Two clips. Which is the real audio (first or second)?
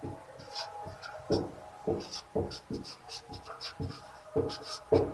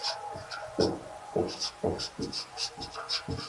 first